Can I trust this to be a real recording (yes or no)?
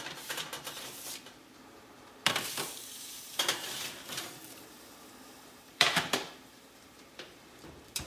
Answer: no